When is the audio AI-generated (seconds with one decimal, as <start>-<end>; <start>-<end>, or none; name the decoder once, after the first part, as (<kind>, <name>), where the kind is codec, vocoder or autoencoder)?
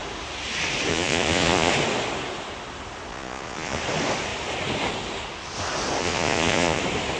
0.9-1.7 (vocoder, Vocos); 3.1-3.8; 6.0-6.8